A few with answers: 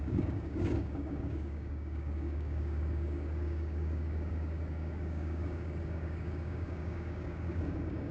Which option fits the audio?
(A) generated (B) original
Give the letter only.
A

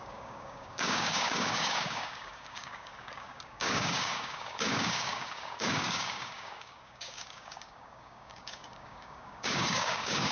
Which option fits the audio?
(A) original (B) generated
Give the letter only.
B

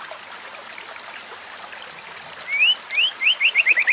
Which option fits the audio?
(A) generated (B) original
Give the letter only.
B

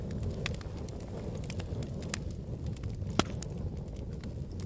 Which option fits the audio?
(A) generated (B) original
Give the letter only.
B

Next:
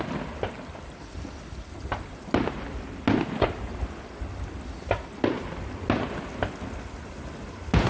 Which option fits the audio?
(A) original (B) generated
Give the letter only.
A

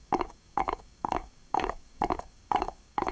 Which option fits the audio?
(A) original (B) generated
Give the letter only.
B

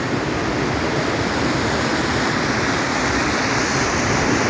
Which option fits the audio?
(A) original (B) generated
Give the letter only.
A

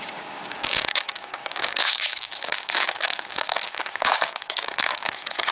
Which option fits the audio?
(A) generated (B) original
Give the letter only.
A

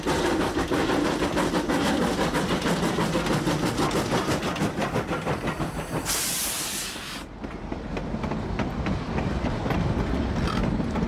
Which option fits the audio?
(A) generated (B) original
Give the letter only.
B